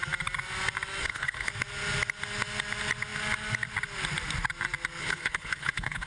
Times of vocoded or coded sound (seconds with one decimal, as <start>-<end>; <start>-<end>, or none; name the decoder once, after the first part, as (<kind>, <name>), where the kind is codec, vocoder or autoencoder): 1.0-1.5 (codec, HILCodec); 5.0-6.1